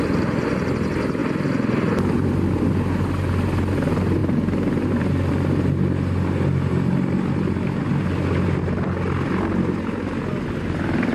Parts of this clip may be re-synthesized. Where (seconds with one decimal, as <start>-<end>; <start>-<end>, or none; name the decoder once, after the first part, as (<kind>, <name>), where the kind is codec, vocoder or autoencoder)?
none